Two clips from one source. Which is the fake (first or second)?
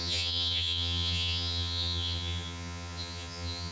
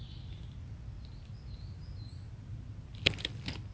first